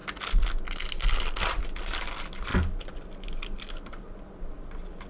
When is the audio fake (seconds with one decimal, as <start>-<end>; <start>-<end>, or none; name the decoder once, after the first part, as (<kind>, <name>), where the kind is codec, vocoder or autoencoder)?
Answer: none